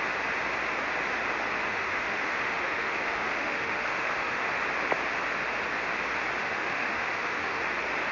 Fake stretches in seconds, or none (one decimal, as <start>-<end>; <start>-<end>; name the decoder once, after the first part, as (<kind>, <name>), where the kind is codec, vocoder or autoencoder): 1.7-4.6 (autoencoder, DAC-VAE); 6.4-7.6